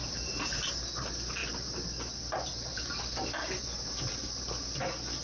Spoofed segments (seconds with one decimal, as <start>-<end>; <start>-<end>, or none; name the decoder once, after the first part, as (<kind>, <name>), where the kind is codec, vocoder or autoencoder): 0.0-0.7 (vocoder, BigVGAN v2); 1.4-4.5